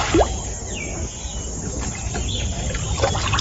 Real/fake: real